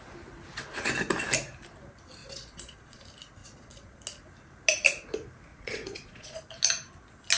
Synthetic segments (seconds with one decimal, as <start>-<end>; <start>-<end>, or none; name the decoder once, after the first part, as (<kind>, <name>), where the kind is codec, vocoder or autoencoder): 2.2-3.0 (vocoder, Vocos); 3.4-4.0; 5.5-6.4

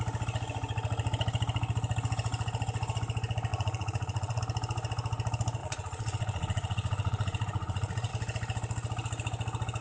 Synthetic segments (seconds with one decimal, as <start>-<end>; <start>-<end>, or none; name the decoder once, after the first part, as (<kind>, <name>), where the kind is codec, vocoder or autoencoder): 3.5-4.4 (vocoder, Vocos); 5.6-8.1

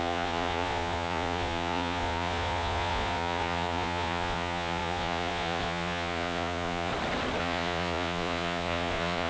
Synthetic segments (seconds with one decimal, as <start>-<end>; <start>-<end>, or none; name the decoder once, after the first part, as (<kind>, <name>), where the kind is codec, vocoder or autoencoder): 0.0-6.9 (vocoder, Vocos); 7.4-9.3

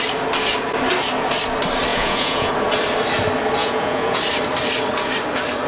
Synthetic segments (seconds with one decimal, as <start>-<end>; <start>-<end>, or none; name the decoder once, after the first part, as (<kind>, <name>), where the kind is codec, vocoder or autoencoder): 1.9-2.5 (vocoder, Vocos); 3.6-4.2

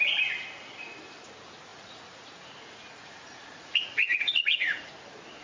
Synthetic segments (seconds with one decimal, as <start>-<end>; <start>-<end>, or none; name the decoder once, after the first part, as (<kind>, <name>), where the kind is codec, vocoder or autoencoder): 1.7-4.9 (vocoder, Vocos)

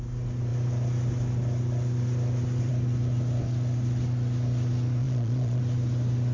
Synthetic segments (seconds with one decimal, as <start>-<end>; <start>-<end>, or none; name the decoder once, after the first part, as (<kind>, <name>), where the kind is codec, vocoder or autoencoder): 5.0-5.6 (vocoder, Vocos)

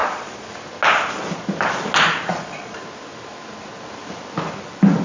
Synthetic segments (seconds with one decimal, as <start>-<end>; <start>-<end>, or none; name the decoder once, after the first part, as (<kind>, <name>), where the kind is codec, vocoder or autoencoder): 0.0-0.5 (vocoder, Vocos); 2.3-2.8